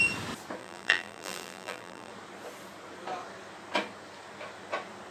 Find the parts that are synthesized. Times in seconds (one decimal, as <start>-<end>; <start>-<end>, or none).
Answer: 0.6-2.1